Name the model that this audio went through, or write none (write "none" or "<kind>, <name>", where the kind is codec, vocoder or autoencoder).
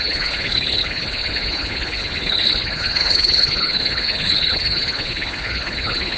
codec, HILCodec